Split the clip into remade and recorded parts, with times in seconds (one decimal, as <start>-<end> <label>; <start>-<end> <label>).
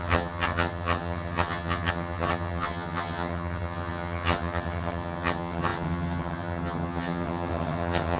0.0-8.2 remade